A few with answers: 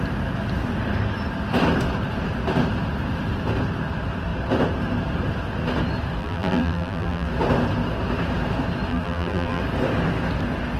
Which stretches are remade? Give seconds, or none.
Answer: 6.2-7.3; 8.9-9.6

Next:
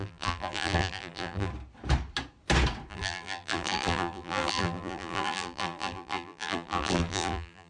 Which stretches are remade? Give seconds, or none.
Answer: 0.0-1.5; 2.9-7.7

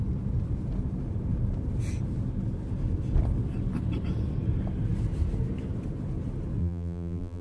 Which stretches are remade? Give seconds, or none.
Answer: 6.6-7.4

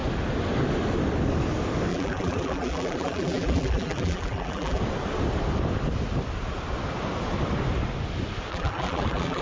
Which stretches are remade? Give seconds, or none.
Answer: 1.9-4.8; 8.5-9.4

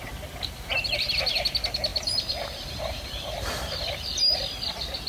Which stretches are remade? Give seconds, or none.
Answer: none

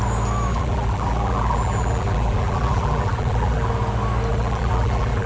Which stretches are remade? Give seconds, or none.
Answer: 0.5-3.7; 4.3-5.3